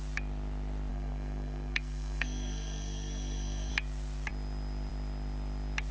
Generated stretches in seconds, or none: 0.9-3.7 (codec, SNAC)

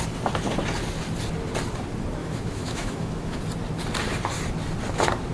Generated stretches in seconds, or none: 2.2-3.4 (autoencoder, DAC-VAE)

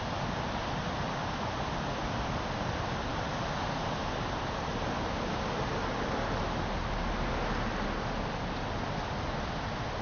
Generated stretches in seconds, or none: none